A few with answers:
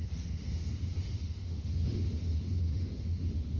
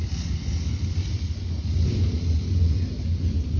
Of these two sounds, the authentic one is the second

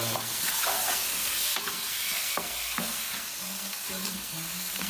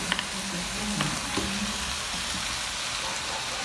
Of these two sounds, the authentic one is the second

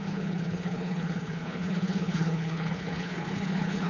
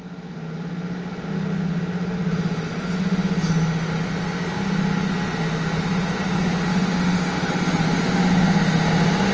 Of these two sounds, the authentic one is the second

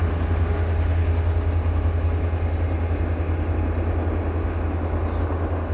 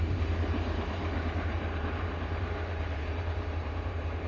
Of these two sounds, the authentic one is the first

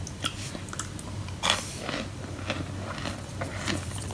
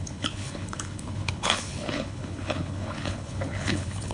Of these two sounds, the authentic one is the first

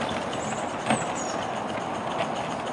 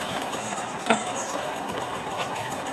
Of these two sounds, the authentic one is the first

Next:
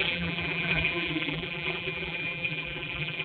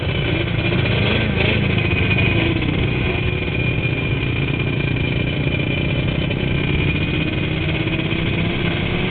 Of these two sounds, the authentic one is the second